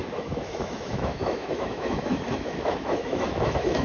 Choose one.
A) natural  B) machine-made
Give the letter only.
B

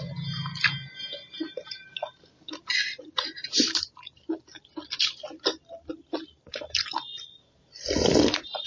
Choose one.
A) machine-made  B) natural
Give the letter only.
B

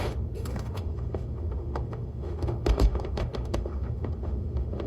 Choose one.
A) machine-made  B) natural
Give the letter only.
A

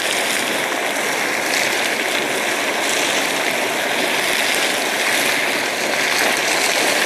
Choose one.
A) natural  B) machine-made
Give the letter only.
A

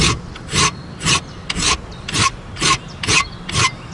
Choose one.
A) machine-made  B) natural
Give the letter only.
B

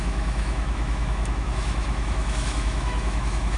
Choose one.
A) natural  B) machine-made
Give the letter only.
B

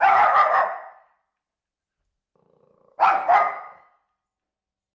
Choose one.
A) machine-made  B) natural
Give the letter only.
B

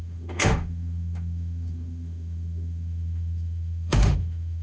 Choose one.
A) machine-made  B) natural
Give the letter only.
A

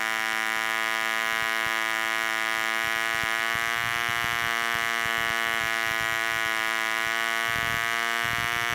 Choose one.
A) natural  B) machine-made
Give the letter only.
A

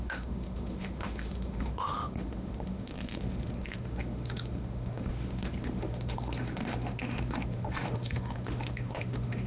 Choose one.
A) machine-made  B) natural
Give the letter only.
A